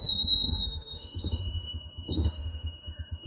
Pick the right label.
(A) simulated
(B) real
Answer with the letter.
A